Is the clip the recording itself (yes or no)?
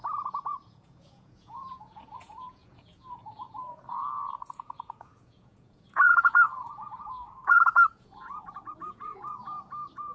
no